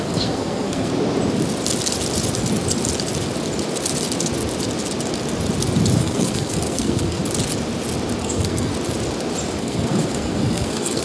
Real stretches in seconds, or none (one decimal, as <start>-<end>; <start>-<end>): 0.9-6.0; 7.2-8.2; 8.7-9.6